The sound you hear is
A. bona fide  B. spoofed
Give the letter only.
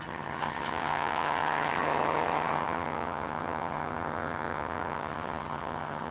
B